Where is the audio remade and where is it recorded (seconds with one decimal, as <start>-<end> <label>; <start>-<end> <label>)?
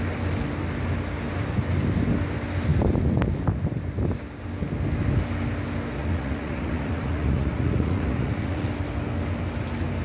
0.0-6.0 recorded; 6.0-8.7 remade; 8.7-10.0 recorded